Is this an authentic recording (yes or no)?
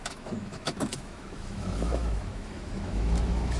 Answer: no